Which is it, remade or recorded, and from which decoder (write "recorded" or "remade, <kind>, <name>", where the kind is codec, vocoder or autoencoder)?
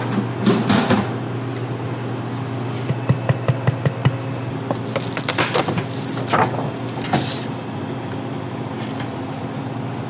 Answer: recorded